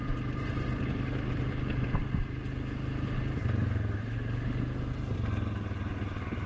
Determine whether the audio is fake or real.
real